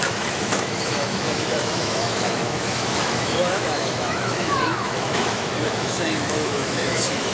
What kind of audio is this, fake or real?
fake